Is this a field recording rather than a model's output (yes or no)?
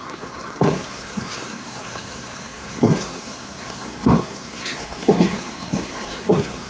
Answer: no